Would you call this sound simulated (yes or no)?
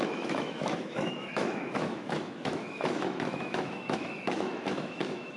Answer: yes